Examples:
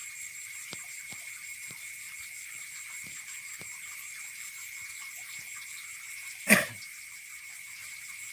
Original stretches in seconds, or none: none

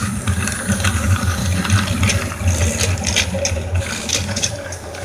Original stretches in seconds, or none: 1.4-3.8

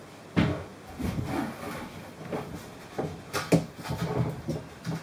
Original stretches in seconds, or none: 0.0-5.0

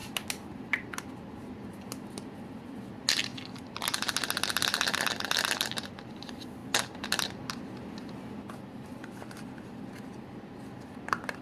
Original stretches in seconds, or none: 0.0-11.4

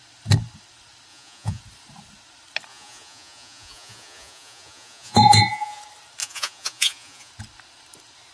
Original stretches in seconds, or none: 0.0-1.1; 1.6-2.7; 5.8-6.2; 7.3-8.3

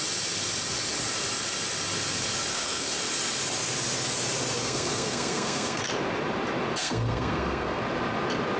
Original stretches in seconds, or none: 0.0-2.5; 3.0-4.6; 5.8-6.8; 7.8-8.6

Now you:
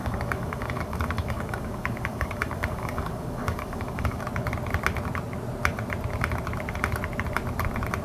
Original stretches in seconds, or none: 4.2-8.0

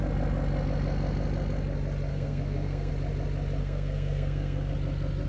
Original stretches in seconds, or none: 0.0-2.1; 2.9-3.6; 4.7-5.3